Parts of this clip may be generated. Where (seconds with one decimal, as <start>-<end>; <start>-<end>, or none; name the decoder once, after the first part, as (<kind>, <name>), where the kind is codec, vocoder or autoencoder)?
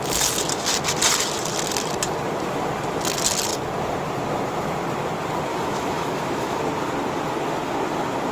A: 5.5-6.6 (autoencoder, DAC-VAE)